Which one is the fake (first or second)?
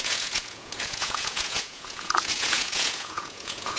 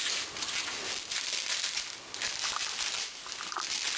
first